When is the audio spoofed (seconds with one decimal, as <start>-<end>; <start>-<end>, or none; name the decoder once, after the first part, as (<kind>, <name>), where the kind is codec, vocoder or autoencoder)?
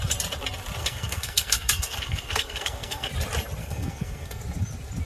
0.8-3.1 (codec, SNAC); 3.6-4.4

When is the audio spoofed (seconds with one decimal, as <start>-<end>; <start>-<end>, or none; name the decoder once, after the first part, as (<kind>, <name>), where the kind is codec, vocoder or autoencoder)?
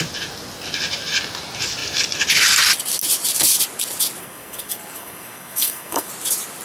4.2-6.1 (codec, SNAC)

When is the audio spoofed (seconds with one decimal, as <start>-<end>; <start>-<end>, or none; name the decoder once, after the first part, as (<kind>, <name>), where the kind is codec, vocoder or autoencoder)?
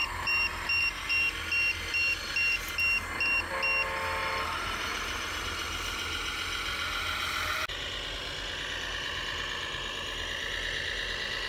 0.0-1.1 (vocoder, BigVGAN v2); 4.2-5.4